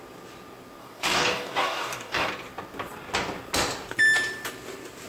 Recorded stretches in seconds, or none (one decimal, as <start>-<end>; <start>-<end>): 0.0-0.8; 2.3-5.1